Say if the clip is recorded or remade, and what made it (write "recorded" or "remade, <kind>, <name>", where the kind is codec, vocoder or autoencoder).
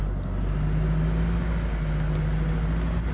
recorded